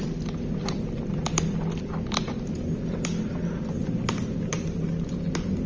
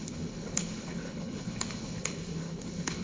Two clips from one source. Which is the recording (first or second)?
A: first